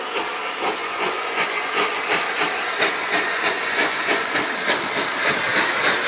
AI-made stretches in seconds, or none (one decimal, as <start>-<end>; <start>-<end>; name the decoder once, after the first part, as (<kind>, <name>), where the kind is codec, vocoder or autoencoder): 0.8-2.0 (vocoder, Vocos); 3.0-4.3